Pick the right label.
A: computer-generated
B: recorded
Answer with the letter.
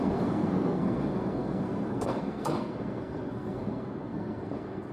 A